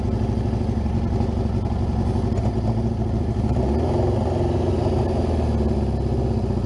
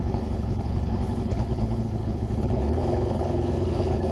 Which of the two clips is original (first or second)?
first